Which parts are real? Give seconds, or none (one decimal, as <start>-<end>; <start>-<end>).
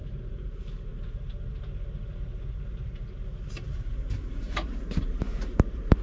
0.9-4.3